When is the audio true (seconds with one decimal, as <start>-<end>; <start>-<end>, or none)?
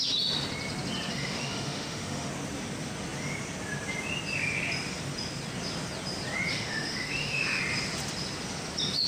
0.0-1.1; 2.3-6.5; 7.6-9.1